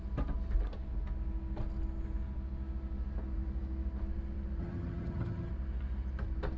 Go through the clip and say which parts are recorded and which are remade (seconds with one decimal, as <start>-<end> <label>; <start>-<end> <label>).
0.0-4.6 recorded; 4.6-5.5 remade; 5.5-6.6 recorded